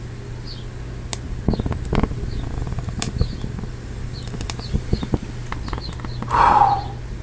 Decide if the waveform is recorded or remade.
recorded